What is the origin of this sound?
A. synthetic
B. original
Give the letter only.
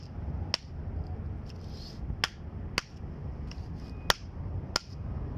B